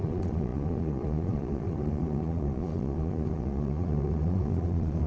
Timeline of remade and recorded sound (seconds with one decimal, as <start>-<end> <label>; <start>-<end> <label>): 0.0-5.1 remade